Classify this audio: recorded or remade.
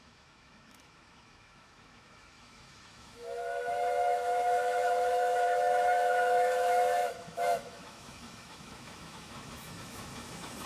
remade